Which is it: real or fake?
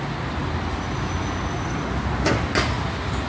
real